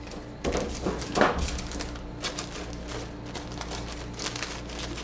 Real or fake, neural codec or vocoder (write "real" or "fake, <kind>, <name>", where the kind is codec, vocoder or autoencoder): real